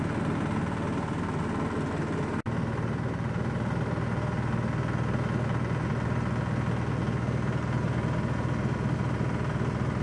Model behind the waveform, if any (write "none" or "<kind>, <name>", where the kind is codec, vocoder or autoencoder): none